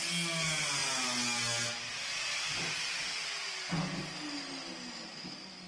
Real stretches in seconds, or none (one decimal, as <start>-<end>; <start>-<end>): 0.0-5.7